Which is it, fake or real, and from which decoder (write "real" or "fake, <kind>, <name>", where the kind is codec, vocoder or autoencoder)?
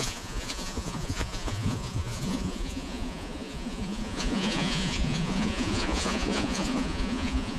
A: fake, vocoder, Vocos